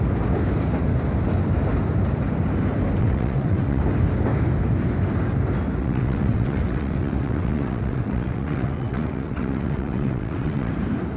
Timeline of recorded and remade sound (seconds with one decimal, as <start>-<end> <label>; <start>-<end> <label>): 0.0-3.0 recorded; 3.0-3.8 remade; 3.8-5.8 recorded; 5.8-10.7 remade; 10.7-11.2 recorded

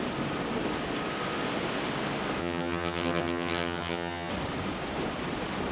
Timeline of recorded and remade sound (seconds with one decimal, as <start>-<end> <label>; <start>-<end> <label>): 0.0-2.4 recorded; 2.4-4.3 remade; 4.3-5.7 recorded

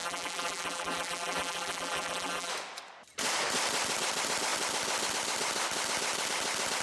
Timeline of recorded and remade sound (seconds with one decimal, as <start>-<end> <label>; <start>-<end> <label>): 0.0-2.5 remade; 2.5-6.8 recorded